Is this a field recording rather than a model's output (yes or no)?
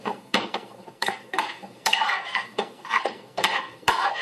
no